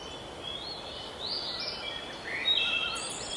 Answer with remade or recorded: recorded